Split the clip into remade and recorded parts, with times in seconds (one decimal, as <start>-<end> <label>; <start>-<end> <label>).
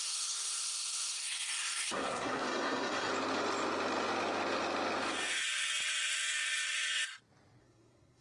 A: 0.0-3.1 remade; 3.1-7.6 recorded; 7.6-8.2 remade